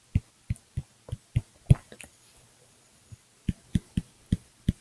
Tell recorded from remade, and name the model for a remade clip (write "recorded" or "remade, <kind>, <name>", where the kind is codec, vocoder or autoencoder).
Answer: recorded